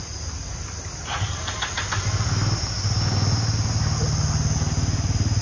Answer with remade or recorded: recorded